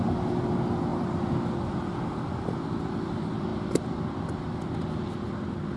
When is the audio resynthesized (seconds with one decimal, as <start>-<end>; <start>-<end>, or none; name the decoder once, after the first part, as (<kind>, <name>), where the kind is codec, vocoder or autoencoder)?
none